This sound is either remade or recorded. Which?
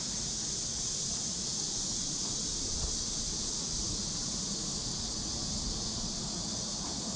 remade